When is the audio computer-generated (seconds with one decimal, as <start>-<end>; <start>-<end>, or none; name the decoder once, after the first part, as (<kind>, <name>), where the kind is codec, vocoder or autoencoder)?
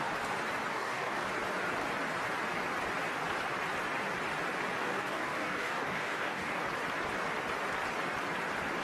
0.7-1.3 (codec, DAC); 4.8-6.6